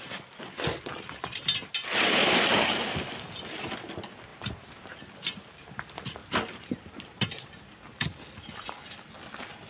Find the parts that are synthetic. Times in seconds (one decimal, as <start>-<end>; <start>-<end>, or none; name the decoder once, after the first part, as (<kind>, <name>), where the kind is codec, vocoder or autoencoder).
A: 4.3-5.0 (vocoder, BigVGAN v2)